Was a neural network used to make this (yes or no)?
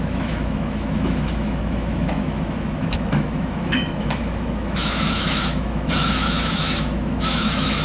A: yes